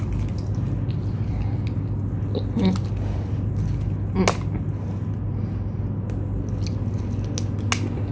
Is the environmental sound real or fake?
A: real